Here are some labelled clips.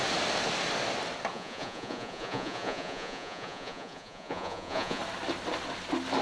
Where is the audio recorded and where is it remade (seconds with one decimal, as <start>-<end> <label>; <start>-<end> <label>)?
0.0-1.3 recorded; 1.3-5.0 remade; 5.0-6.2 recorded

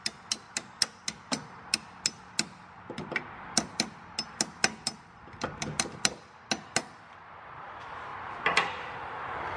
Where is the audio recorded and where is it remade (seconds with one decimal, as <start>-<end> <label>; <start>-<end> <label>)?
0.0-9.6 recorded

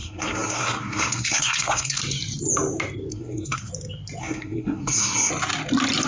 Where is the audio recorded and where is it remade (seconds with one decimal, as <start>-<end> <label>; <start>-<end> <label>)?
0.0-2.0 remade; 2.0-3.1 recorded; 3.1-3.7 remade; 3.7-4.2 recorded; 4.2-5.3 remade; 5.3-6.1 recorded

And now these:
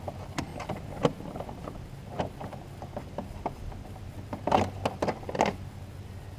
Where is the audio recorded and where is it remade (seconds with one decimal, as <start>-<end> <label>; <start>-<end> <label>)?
0.0-6.4 recorded

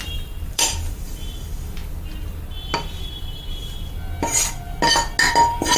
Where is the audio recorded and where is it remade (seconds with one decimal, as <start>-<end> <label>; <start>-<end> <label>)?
0.0-1.8 remade; 1.8-5.3 recorded; 5.3-5.8 remade

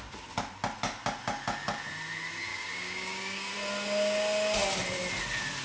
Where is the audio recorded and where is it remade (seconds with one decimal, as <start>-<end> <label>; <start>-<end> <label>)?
0.0-2.5 recorded; 2.5-3.5 remade; 3.5-5.6 recorded

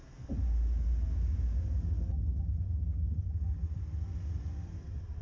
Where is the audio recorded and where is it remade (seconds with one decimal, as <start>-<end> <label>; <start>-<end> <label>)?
0.0-5.2 recorded